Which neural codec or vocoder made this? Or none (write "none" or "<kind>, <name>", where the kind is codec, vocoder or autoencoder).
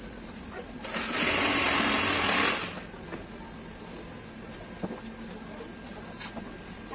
none